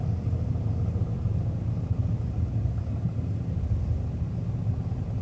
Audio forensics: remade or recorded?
recorded